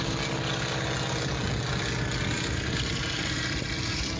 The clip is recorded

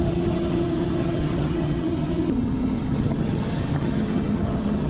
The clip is remade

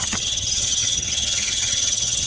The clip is remade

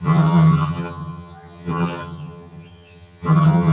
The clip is remade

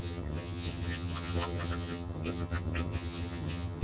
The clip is remade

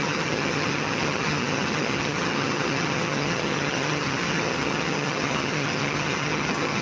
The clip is remade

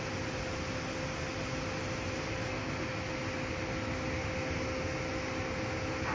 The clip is recorded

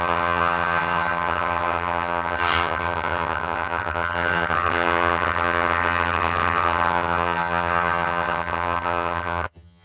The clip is remade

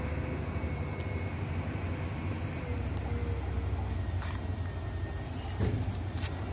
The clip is recorded